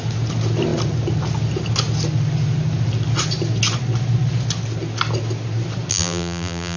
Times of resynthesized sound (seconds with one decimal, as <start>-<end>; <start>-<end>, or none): 5.9-6.8